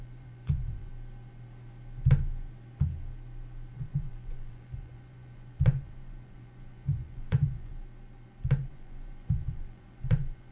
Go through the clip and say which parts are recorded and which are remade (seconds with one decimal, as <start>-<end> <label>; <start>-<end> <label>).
0.0-0.9 remade; 0.9-3.7 recorded; 3.7-7.7 remade; 7.7-8.7 recorded; 8.7-10.5 remade